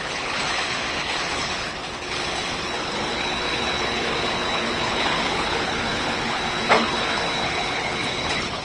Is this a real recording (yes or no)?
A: no